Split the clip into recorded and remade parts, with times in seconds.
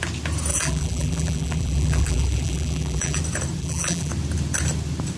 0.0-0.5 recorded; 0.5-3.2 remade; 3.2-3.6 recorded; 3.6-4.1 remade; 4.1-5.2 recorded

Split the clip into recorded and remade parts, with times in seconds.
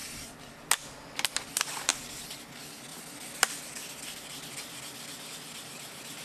0.0-1.9 recorded; 1.9-2.5 remade; 2.5-2.9 recorded; 2.9-5.3 remade; 5.3-6.2 recorded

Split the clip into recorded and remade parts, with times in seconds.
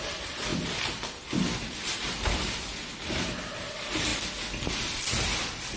0.0-5.8 recorded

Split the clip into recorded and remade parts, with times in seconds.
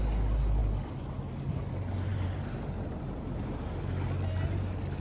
0.0-2.1 recorded; 2.1-3.6 remade; 3.6-5.0 recorded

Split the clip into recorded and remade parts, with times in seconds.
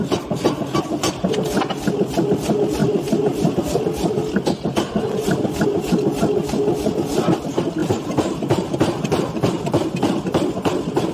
0.0-2.8 recorded; 2.8-3.7 remade; 3.7-7.8 recorded; 7.8-9.9 remade; 9.9-11.1 recorded